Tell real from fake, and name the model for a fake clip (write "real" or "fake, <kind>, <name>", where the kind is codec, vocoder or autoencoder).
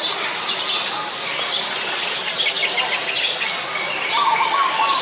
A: real